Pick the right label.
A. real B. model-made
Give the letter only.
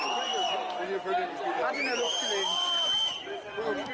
A